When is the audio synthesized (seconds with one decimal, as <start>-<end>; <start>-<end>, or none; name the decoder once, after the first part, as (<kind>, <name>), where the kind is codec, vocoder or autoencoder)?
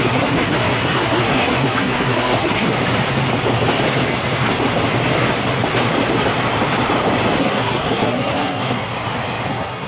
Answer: 0.0-2.7 (codec, SNAC); 7.4-8.9; 9.5-9.9